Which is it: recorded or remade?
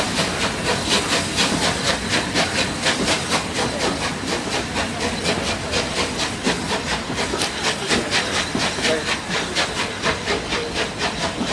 recorded